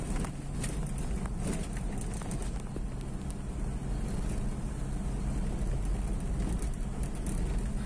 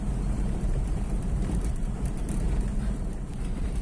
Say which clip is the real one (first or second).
first